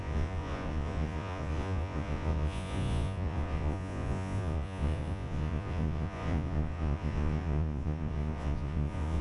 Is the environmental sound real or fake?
fake